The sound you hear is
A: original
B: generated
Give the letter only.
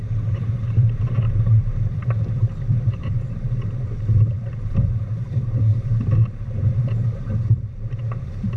B